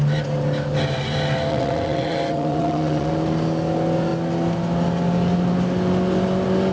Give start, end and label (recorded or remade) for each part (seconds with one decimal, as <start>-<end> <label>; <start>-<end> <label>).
0.0-1.5 recorded; 1.5-3.1 remade; 3.1-6.7 recorded